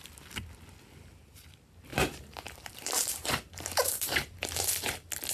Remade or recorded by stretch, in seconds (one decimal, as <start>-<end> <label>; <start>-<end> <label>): 0.0-1.9 recorded; 1.9-4.7 remade; 4.7-5.3 recorded